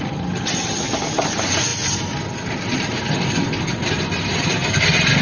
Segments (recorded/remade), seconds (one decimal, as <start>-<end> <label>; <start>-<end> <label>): 0.0-5.2 recorded